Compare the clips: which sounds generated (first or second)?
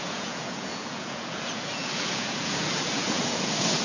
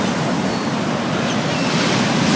first